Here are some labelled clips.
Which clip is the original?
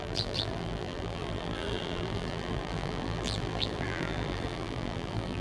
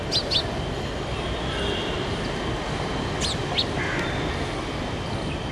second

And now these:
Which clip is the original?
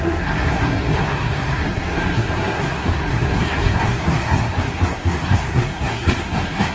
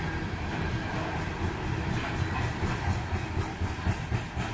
second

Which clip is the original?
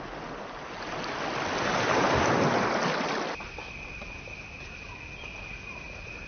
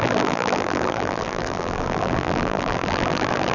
first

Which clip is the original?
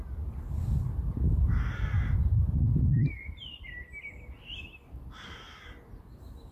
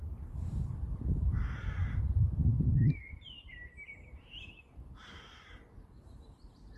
first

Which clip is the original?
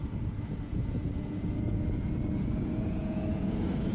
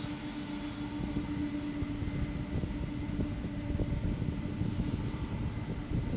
second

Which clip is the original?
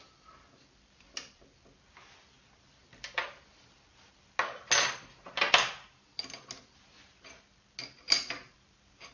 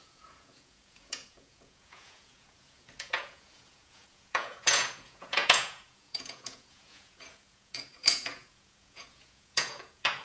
first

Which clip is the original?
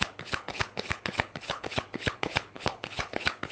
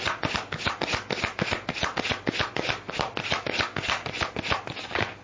second